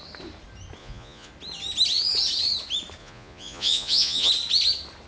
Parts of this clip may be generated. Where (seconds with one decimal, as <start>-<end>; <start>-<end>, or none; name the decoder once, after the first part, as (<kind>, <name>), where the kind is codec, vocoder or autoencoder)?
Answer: 0.8-1.3 (vocoder, Vocos); 3.0-4.3